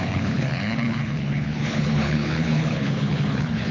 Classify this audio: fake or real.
fake